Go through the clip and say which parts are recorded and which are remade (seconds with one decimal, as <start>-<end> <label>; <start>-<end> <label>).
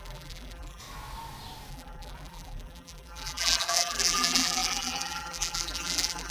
0.0-0.8 remade; 0.8-1.7 recorded; 1.7-6.3 remade